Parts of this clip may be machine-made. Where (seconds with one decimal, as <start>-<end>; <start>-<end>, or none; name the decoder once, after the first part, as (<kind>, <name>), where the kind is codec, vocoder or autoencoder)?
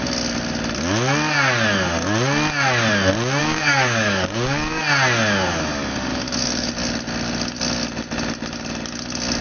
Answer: 3.4-4.8 (codec, DAC); 6.1-6.7